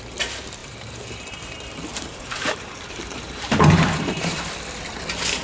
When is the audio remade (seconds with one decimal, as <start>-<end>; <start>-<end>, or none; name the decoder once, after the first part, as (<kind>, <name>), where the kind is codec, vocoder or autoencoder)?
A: 0.6-1.4 (vocoder, BigVGAN v2); 1.9-4.4

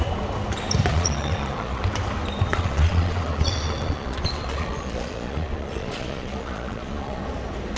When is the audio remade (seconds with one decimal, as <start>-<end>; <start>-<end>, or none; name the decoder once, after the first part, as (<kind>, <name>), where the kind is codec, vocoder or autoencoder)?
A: 0.9-1.8 (vocoder, Vocos); 2.5-7.2

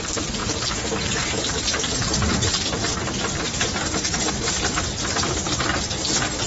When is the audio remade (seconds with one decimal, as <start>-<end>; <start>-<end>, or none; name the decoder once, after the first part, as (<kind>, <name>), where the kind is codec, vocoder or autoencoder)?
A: none

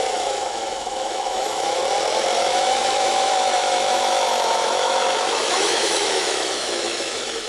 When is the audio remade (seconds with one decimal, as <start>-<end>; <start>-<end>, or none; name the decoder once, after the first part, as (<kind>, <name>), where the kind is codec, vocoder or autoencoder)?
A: 0.0-1.8 (autoencoder, DAC-VAE); 2.4-7.5

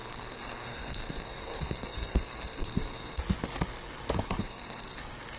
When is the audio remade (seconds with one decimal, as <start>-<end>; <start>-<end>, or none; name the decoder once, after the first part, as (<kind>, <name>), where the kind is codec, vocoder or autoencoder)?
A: 0.0-3.2 (codec, SNAC); 4.4-5.0

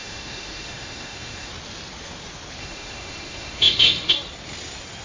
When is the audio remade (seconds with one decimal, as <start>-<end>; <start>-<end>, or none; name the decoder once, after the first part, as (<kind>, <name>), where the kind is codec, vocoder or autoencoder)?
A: 0.0-1.5 (autoencoder, DAC-VAE); 2.6-4.1